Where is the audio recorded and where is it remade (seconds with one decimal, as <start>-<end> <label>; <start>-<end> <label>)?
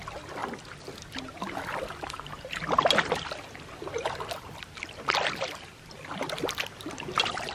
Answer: 0.0-7.5 recorded